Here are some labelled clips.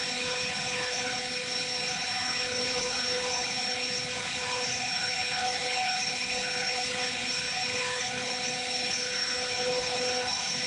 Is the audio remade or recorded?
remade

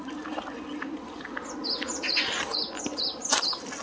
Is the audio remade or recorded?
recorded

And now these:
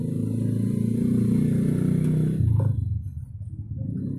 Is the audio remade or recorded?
recorded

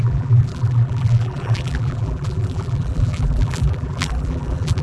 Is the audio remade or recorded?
remade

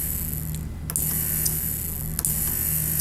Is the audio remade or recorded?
recorded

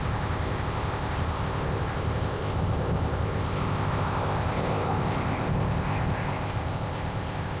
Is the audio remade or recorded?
remade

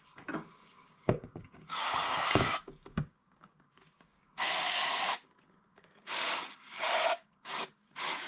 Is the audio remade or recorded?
remade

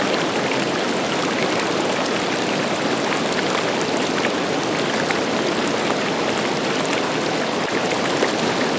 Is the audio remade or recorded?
recorded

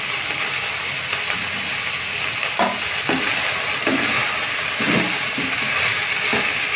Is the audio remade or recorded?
recorded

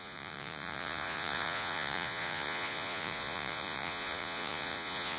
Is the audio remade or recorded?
remade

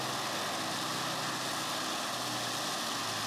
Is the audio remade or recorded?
recorded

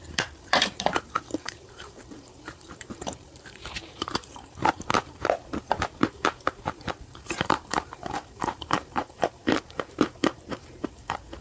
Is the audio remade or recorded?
remade